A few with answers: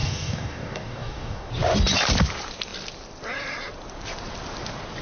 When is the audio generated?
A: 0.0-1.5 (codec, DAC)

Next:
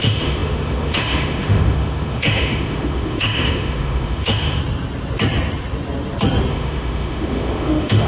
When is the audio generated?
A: 0.0-4.6 (autoencoder, DAC-VAE); 6.5-8.1

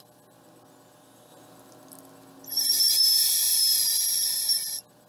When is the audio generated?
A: none

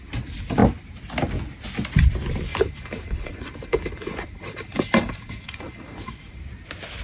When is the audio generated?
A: 2.5-6.4 (vocoder, BigVGAN v2)

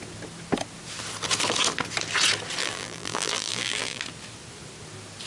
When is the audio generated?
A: 2.6-4.0 (vocoder, BigVGAN v2)

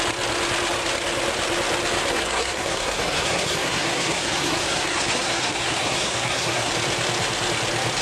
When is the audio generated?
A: 2.1-6.7 (codec, SNAC)